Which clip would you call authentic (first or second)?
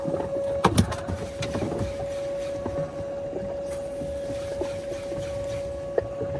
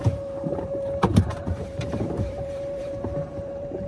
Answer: first